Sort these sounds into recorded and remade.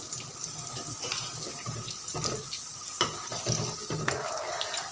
recorded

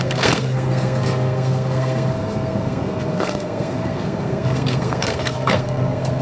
remade